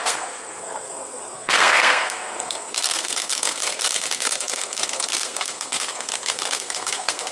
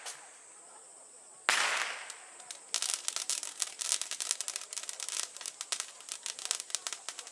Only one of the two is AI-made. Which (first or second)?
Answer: first